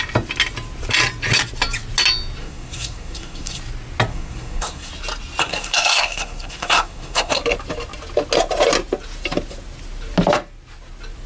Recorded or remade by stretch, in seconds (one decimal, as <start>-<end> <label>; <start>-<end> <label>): 0.0-2.4 recorded; 2.4-3.6 remade; 3.6-4.1 recorded; 4.1-4.9 remade; 4.9-5.4 recorded; 5.4-7.4 remade; 7.4-11.3 recorded